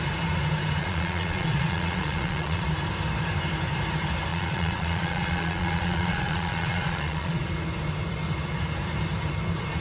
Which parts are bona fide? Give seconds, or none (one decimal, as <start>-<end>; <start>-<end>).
0.0-0.8; 2.7-4.3; 7.4-9.8